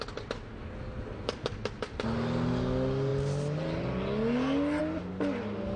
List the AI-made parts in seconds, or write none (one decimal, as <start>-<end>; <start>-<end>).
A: none